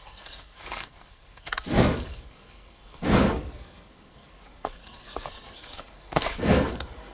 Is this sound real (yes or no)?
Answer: no